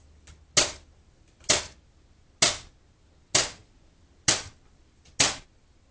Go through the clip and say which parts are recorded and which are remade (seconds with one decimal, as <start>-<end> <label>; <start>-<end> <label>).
0.0-5.9 recorded